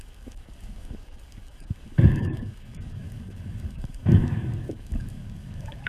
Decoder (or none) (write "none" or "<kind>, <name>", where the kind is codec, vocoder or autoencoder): codec, DAC